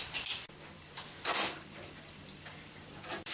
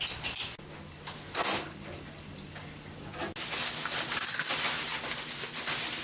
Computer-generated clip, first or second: first